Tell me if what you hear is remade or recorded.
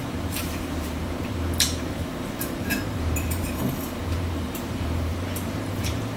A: remade